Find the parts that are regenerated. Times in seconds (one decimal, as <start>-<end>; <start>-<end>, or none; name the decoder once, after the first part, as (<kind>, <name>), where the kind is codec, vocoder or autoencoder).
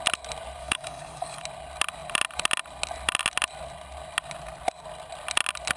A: 0.6-1.4 (codec, DAC)